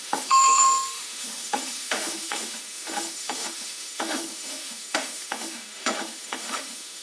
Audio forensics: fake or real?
fake